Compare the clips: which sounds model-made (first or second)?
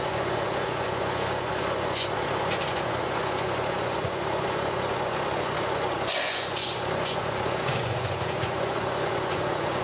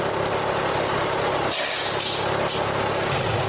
first